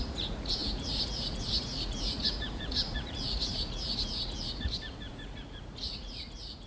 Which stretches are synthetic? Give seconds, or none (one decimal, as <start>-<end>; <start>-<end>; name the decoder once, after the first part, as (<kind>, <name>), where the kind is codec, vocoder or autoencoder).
0.0-6.7 (vocoder, Vocos)